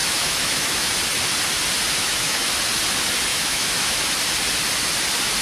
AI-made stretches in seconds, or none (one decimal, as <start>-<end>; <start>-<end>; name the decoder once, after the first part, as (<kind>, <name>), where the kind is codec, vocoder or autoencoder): 0.0-0.9 (autoencoder, DAC-VAE); 2.0-2.5; 3.3-4.0